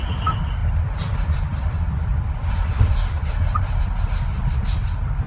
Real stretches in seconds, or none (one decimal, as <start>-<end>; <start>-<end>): 0.0-0.6; 3.8-5.3